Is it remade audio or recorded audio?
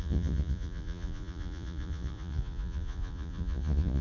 remade